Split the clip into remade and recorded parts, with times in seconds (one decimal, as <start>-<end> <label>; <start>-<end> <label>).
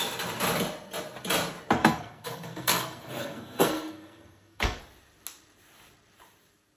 0.0-1.8 recorded; 1.8-4.8 remade; 4.8-6.8 recorded